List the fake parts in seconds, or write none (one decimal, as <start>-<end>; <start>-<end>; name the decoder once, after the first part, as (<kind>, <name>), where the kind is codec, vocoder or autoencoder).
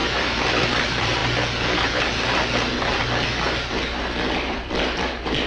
0.0-1.2 (vocoder, BigVGAN v2); 4.5-5.5